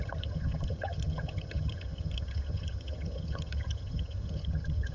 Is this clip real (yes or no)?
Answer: no